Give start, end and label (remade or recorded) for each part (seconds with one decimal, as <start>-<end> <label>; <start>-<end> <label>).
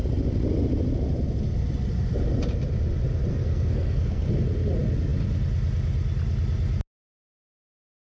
0.0-3.3 recorded; 3.3-4.3 remade; 4.3-8.0 recorded